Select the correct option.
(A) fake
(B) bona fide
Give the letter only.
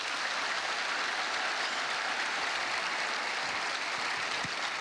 B